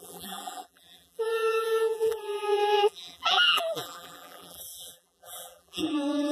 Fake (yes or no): yes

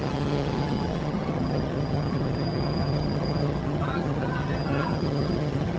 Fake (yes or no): yes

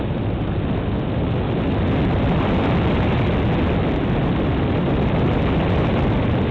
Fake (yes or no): no